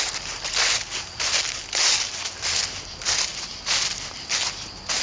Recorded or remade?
recorded